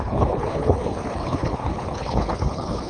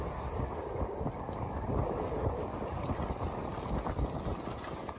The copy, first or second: first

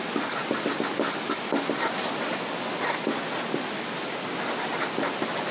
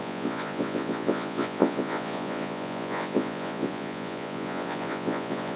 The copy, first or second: second